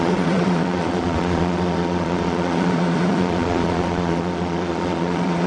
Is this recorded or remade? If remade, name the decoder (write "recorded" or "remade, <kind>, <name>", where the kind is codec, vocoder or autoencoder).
remade, vocoder, Vocos